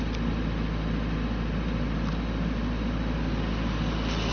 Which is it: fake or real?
real